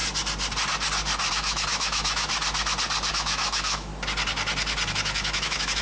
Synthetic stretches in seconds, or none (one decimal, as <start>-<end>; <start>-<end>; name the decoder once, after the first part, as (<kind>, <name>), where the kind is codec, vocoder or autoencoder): 1.3-2.3 (autoencoder, DAC-VAE); 3.1-3.9; 4.9-5.8

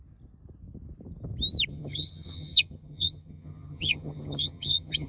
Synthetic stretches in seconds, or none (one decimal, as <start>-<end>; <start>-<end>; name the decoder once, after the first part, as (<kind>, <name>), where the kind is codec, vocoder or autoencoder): 1.7-5.1 (vocoder, HiFi-GAN)

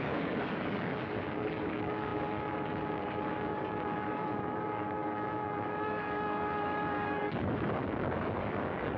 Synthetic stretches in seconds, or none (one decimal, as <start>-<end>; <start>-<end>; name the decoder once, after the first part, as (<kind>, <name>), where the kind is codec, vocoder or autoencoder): 0.0-9.0 (codec, DAC)

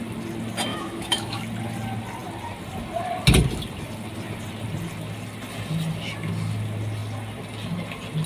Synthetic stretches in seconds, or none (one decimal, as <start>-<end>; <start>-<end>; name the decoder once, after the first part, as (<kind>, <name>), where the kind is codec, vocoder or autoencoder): 0.7-1.4 (autoencoder, DAC-VAE)